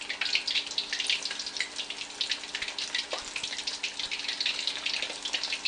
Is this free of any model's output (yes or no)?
yes